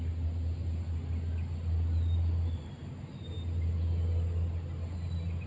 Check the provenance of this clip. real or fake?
real